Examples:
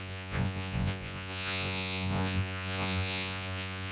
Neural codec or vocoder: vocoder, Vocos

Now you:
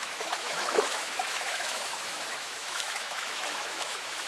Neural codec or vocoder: autoencoder, DAC-VAE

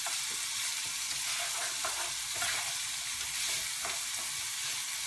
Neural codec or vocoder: none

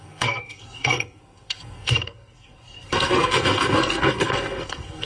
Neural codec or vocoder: codec, SNAC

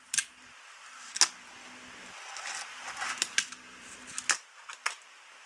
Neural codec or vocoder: none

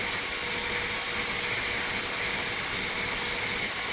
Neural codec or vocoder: none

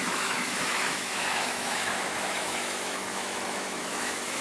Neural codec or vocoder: autoencoder, DAC-VAE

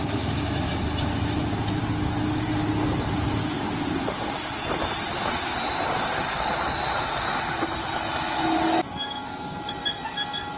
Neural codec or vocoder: none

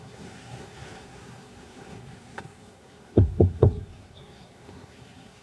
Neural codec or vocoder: codec, SNAC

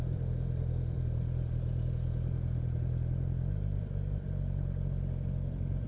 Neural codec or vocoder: vocoder, BigVGAN v2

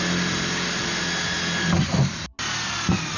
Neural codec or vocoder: none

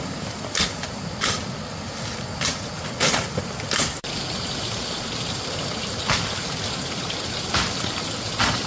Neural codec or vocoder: none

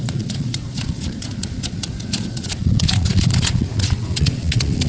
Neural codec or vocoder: vocoder, Vocos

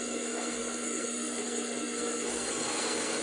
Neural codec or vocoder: codec, SNAC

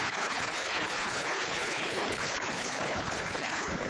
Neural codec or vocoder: codec, HILCodec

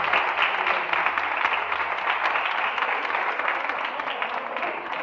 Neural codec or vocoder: none